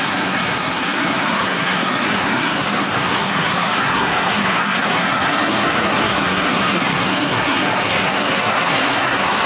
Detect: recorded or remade remade